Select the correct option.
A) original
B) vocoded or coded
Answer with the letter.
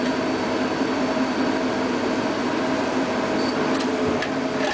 A